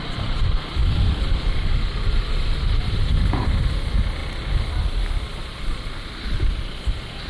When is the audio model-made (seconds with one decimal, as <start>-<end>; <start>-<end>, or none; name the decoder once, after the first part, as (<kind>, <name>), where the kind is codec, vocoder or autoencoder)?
0.8-1.7 (vocoder, BigVGAN v2)